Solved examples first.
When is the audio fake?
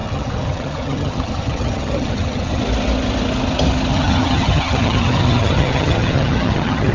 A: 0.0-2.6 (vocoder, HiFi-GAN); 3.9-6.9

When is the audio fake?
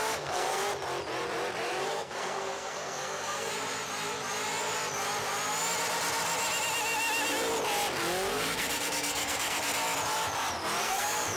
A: 0.0-0.6 (codec, SNAC); 1.8-3.5; 8.3-9.6; 10.8-11.4